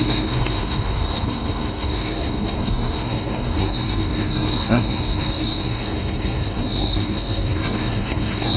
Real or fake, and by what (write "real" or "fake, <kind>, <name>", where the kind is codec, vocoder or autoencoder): fake, codec, SNAC